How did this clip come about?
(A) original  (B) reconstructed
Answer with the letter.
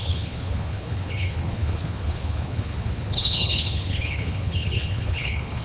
B